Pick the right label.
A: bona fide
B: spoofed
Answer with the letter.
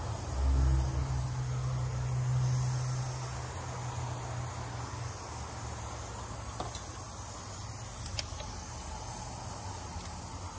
A